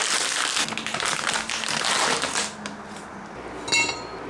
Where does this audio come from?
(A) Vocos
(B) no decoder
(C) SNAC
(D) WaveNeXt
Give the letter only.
B